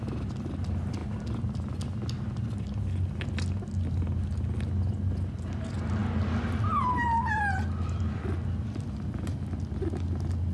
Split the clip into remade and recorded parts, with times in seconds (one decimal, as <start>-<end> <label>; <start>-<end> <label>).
0.0-10.5 recorded